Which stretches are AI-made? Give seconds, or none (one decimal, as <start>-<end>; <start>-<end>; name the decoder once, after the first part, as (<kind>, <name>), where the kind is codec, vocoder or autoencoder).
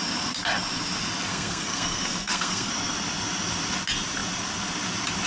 1.3-2.7 (codec, SNAC)